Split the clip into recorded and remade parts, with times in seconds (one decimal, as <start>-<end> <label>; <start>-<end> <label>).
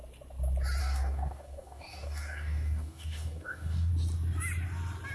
0.0-0.8 recorded; 0.8-3.9 remade; 3.9-5.1 recorded